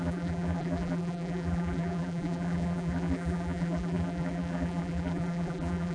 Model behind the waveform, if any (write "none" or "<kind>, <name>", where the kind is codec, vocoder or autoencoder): vocoder, BigVGAN v2